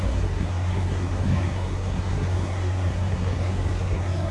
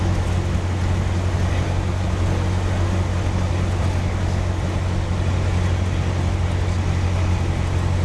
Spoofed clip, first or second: first